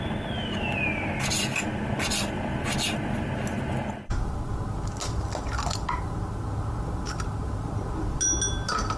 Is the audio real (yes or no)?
yes